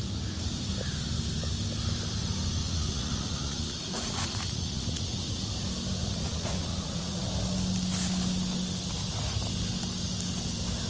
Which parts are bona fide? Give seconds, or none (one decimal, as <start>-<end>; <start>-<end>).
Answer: 0.0-2.6; 5.4-6.0; 7.2-10.9